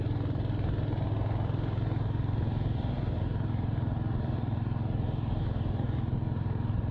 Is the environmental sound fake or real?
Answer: real